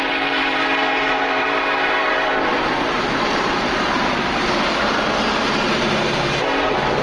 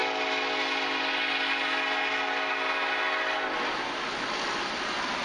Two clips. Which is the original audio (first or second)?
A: second